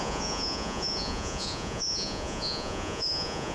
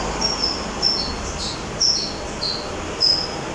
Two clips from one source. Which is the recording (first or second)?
second